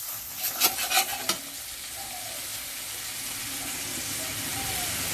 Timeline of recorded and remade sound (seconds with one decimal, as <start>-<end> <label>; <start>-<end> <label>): 0.0-5.1 recorded